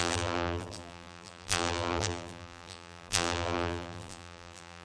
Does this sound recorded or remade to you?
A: remade